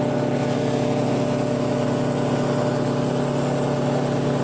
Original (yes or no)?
yes